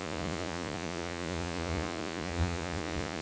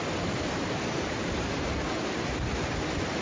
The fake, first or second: first